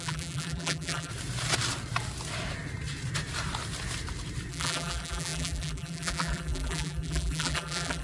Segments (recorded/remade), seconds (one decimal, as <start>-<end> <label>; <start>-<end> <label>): 0.0-1.1 remade; 1.1-4.5 recorded; 4.5-8.0 remade